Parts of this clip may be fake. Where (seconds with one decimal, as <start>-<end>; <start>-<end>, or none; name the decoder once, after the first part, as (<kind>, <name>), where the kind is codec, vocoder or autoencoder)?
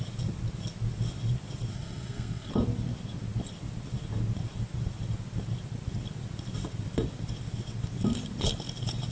1.7-2.5 (codec, SNAC)